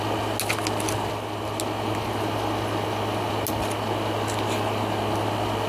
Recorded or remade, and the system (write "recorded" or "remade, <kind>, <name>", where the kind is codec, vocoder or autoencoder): recorded